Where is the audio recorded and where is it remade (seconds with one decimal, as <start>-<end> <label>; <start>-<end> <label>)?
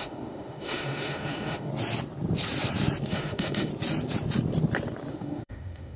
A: 0.0-1.7 remade; 1.7-3.1 recorded; 3.1-3.7 remade; 3.7-5.1 recorded; 5.1-6.0 remade